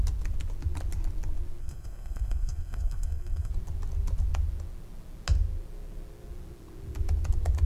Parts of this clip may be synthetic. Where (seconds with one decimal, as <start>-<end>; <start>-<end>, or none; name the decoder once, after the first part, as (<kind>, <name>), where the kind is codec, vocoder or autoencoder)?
1.6-3.5 (codec, SNAC)